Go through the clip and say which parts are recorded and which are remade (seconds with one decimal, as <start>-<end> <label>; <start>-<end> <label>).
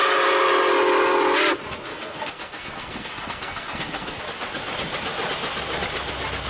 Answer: 0.0-1.9 recorded; 1.9-4.2 remade; 4.2-6.5 recorded